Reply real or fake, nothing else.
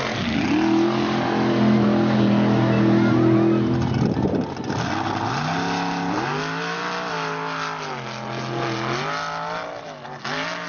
real